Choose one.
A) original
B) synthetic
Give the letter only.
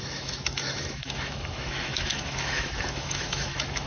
B